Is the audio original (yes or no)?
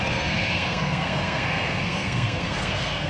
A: no